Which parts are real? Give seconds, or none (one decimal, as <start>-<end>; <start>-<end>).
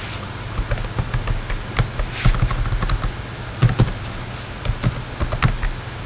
0.0-6.1